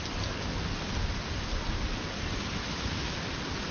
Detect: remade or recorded recorded